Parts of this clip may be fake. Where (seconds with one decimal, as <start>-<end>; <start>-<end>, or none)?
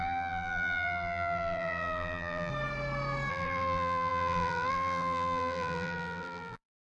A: 0.0-2.5; 3.3-7.0